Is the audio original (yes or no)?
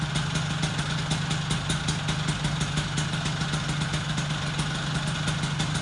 yes